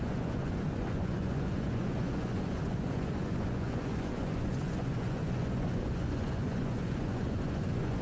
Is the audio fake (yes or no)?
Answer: yes